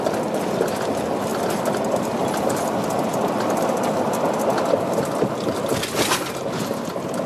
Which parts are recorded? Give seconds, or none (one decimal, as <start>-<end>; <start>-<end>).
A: 0.0-7.3